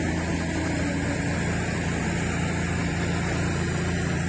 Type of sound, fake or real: real